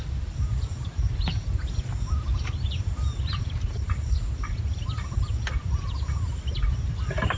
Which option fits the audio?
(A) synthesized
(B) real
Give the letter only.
B